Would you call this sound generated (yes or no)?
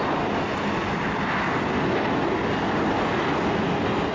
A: no